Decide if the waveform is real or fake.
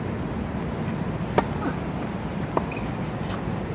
real